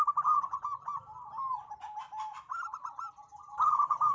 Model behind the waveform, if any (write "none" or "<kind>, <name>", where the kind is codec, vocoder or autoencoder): none